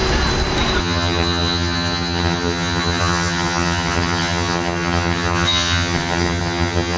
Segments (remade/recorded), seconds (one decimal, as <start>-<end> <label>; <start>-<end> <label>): 0.0-0.8 recorded; 0.8-7.0 remade